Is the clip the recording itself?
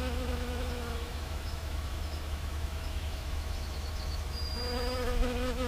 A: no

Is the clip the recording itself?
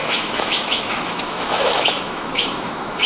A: no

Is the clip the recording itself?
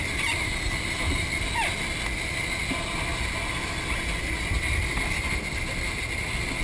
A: yes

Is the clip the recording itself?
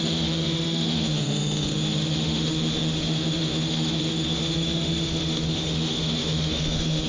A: no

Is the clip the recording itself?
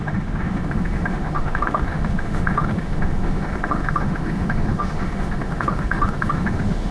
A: no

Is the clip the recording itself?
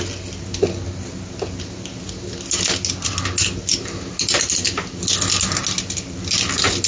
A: yes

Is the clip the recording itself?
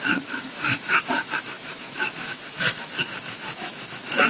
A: no